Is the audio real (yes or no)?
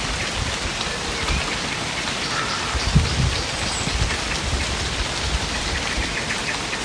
yes